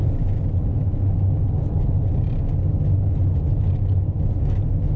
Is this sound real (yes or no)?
yes